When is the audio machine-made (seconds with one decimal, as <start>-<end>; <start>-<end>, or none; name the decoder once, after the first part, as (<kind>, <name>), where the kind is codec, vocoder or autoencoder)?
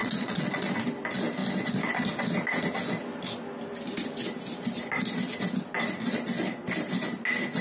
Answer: 0.0-0.7 (vocoder, Vocos)